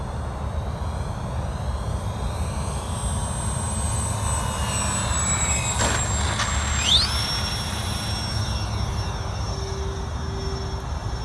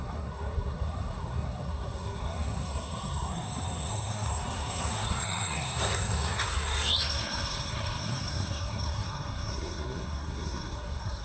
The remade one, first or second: second